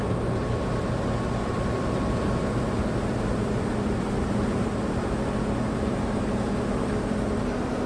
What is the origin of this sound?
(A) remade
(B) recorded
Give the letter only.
A